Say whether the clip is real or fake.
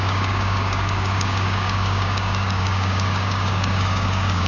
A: fake